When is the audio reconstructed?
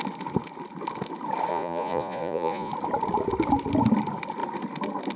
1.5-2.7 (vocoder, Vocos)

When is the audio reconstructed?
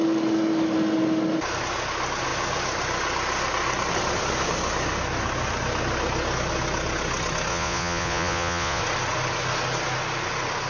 7.5-8.8 (vocoder, Vocos)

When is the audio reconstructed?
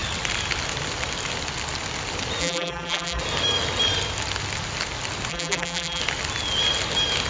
2.4-3.2 (vocoder, BigVGAN v2); 5.3-6.0